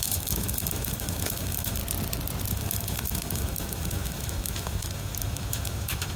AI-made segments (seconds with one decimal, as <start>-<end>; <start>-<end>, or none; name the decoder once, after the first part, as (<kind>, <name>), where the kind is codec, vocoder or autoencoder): 0.0-1.8 (autoencoder, DAC-VAE); 2.5-6.2